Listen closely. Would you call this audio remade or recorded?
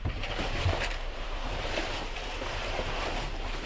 remade